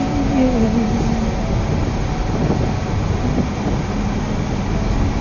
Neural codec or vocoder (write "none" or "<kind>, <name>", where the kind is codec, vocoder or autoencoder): none